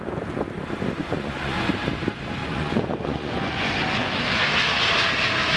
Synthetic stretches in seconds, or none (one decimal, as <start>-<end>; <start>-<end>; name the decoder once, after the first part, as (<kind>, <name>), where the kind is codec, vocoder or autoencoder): 1.0-1.7 (vocoder, Vocos); 2.4-4.2